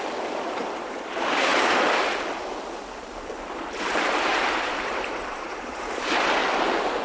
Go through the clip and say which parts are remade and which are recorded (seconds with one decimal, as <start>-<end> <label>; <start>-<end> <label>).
0.0-1.5 remade; 1.5-3.8 recorded; 3.8-6.4 remade; 6.4-7.0 recorded